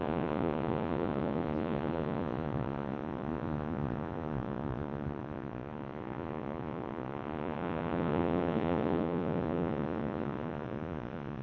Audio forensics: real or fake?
fake